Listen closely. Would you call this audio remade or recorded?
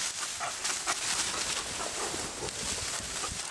recorded